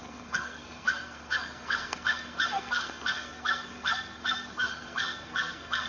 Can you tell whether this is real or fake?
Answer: fake